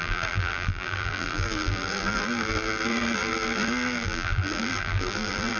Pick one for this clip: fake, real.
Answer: fake